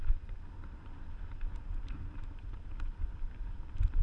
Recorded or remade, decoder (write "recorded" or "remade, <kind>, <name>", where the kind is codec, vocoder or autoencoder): recorded